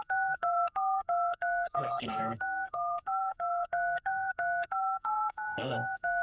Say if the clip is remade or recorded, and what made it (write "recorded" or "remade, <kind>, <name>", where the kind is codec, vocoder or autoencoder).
remade, codec, SNAC